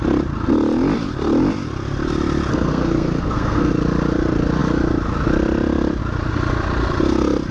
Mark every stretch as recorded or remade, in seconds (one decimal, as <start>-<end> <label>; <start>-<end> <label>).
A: 0.0-2.5 recorded; 2.5-3.7 remade; 3.7-7.5 recorded